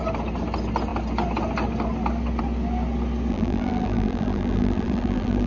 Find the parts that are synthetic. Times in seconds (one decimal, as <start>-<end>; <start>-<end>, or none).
3.3-5.5